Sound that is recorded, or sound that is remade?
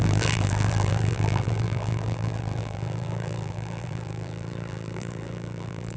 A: remade